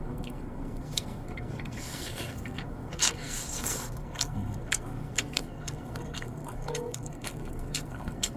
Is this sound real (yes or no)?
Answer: no